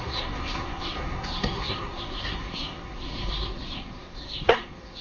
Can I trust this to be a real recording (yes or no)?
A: no